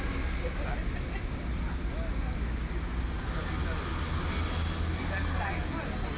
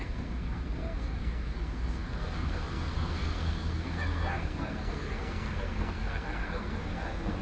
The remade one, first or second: second